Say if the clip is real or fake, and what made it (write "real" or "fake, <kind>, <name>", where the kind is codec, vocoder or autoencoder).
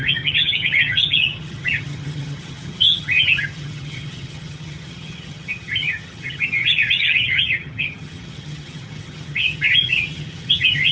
fake, vocoder, HiFi-GAN